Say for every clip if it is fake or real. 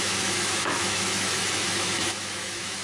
fake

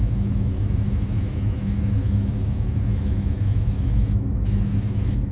fake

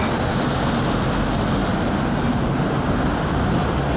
real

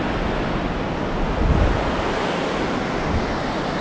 real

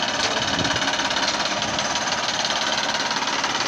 real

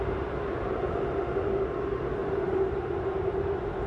real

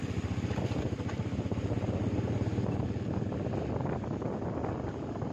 real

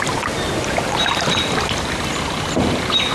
real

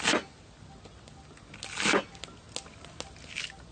real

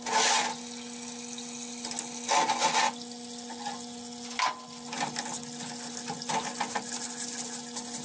real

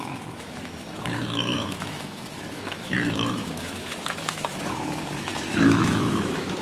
fake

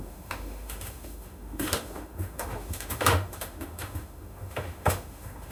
fake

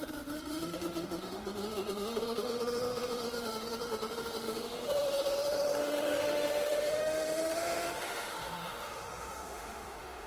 fake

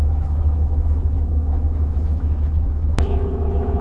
fake